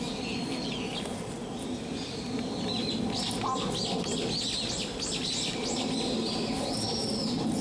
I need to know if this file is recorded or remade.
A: recorded